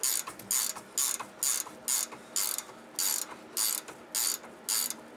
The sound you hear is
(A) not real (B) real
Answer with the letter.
B